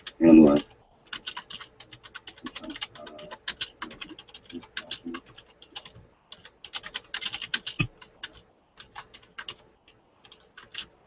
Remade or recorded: recorded